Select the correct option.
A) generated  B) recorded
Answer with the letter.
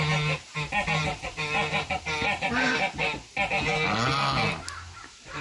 B